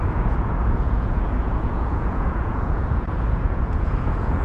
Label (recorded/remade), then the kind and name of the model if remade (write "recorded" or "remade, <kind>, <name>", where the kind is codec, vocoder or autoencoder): remade, vocoder, Vocos